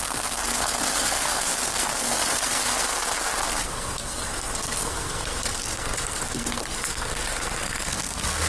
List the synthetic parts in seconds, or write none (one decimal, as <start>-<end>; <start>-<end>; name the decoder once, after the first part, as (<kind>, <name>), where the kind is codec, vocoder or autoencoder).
0.0-8.5 (codec, SNAC)